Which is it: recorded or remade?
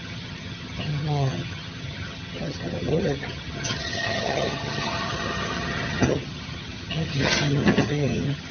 remade